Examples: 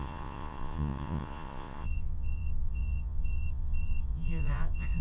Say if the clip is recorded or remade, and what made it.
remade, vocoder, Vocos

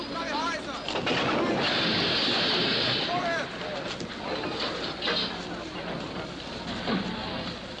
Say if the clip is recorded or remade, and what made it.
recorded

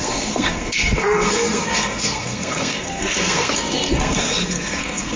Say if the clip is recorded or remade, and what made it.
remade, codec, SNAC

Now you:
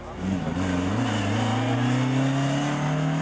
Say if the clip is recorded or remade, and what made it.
recorded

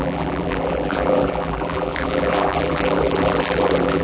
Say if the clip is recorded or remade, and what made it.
remade, vocoder, BigVGAN v2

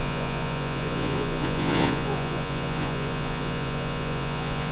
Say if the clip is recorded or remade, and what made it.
remade, vocoder, Vocos